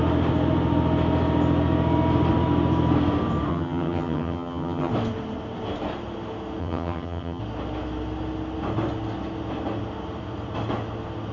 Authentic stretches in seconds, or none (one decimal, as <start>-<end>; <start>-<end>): 0.0-3.5; 4.9-6.6; 7.4-11.3